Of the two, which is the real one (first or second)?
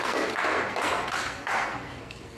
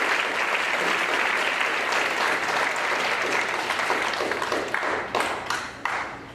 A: second